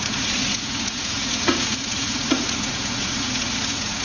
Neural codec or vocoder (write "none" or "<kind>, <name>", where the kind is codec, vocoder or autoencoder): vocoder, Vocos